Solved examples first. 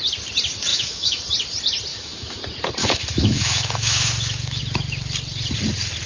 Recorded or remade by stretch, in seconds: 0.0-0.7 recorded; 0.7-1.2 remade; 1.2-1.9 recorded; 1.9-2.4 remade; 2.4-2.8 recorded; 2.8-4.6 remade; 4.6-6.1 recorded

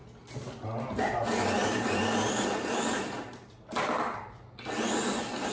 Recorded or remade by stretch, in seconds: 0.0-5.5 recorded

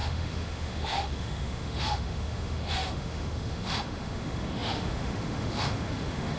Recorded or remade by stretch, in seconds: 0.0-6.4 remade